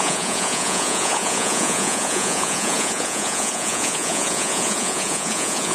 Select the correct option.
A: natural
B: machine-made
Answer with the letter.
B